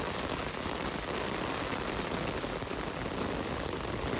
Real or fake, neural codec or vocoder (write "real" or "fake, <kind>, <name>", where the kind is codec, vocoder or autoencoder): real